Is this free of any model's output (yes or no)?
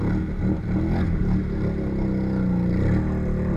yes